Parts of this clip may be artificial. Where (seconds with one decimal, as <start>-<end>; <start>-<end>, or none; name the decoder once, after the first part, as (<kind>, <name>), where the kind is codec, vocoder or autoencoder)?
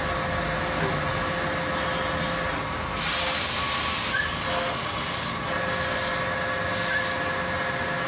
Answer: none